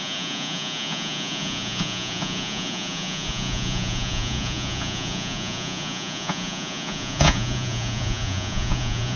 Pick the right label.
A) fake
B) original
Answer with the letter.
A